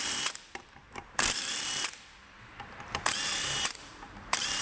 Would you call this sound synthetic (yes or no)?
yes